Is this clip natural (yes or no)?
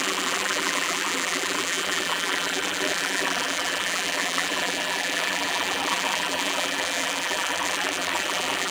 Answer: no